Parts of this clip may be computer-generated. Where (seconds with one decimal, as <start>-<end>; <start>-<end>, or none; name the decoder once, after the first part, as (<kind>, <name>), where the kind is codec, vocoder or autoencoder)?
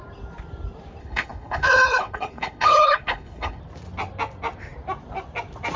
1.0-3.6 (codec, HILCodec)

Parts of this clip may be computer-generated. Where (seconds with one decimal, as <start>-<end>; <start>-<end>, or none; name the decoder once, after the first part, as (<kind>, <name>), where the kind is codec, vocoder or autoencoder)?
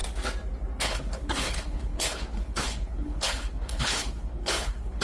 0.8-5.0 (codec, HILCodec)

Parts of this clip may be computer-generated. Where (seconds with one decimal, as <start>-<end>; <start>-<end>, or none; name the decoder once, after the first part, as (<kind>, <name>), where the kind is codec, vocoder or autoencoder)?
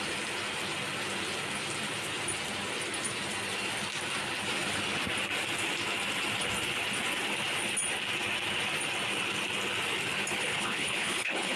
10.4-11.6 (codec, HILCodec)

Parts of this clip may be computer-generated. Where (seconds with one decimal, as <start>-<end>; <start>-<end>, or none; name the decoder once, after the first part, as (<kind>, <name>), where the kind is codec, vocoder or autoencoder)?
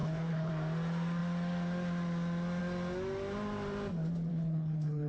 0.0-0.5 (codec, HILCodec); 4.3-5.1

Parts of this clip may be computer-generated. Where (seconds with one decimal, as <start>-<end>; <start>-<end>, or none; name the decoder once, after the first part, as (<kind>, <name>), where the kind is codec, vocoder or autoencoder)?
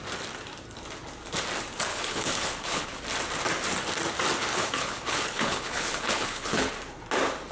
1.9-3.0 (codec, HILCodec); 4.5-6.7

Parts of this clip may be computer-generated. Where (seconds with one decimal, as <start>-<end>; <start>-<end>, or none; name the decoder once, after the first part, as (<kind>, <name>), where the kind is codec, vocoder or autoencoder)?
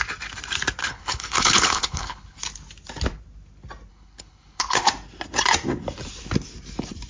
0.8-2.4 (codec, HILCodec); 3.9-4.9